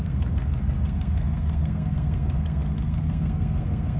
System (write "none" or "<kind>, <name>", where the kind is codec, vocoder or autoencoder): codec, SNAC